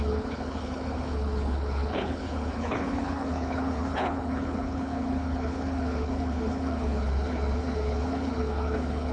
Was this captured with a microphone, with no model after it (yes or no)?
no